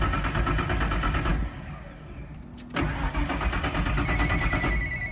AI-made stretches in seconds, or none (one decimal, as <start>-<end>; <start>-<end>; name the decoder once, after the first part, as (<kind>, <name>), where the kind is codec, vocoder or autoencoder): none